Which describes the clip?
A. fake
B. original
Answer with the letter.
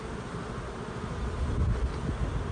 B